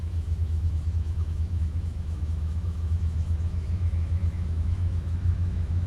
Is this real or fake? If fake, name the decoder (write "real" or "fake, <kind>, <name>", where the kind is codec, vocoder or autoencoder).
fake, autoencoder, DAC-VAE